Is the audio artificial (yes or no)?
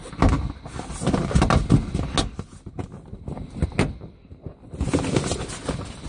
no